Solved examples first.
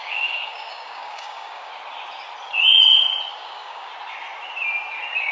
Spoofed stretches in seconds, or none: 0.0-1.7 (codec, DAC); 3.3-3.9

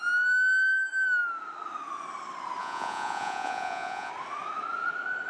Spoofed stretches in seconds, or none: 2.6-4.1 (vocoder, Vocos)

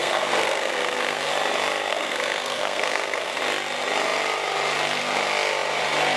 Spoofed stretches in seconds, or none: 0.0-1.3 (codec, SNAC); 1.9-3.4

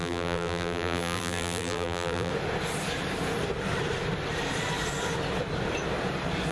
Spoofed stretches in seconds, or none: 0.0-2.3 (vocoder, BigVGAN v2)

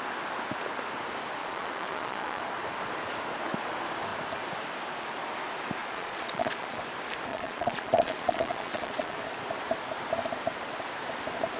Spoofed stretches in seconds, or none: 1.4-2.4 (vocoder, Vocos); 5.8-6.8; 7.3-9.2

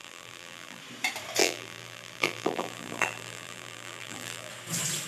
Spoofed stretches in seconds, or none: 0.0-0.8 (vocoder, BigVGAN v2); 1.4-4.5

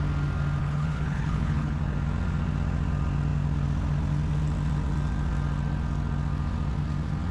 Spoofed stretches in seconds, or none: 0.6-1.8 (codec, HILCodec)